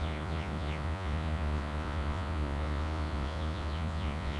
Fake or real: fake